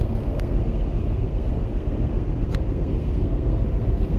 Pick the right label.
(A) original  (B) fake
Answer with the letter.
B